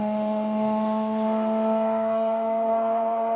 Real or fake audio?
fake